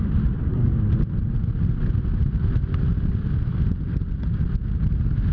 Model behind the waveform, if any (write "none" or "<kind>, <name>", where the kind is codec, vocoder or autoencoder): none